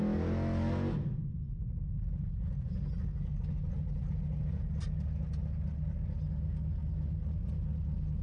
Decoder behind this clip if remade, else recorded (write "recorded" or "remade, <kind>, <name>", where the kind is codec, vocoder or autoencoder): recorded